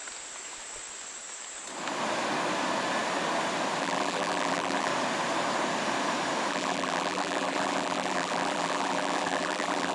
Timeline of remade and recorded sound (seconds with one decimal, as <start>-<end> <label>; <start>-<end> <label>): 0.0-3.8 recorded; 3.8-4.9 remade; 4.9-6.5 recorded; 6.5-9.9 remade